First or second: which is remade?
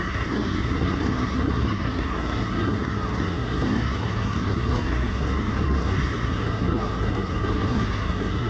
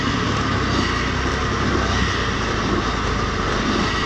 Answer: first